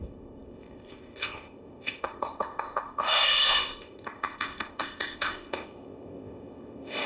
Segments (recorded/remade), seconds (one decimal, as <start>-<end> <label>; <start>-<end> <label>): 0.0-7.1 remade

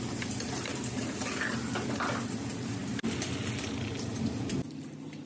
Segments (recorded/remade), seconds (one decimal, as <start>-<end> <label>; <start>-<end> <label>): 0.0-5.3 recorded

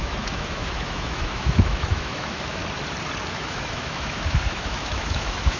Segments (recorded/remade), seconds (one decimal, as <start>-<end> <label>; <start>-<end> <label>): 0.0-2.6 remade; 2.6-3.3 recorded; 3.3-5.6 remade

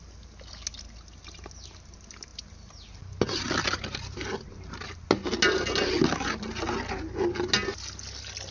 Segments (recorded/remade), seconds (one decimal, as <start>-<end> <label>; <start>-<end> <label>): 0.0-8.5 recorded

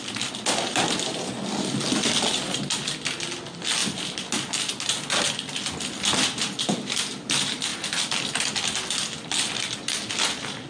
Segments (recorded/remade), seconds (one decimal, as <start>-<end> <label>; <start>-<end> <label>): 0.0-10.7 recorded

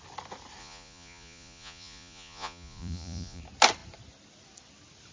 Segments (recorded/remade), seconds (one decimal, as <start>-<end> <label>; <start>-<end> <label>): 0.0-0.6 recorded; 0.6-3.4 remade; 3.4-5.1 recorded